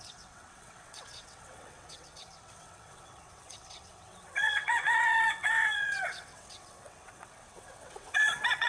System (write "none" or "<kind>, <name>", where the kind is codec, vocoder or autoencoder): vocoder, WaveNeXt